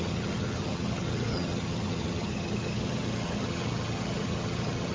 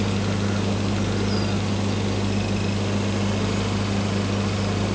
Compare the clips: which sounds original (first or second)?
second